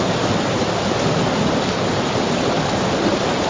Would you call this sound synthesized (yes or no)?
no